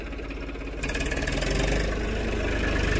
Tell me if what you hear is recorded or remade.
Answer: recorded